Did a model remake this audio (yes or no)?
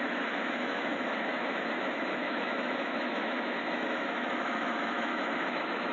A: yes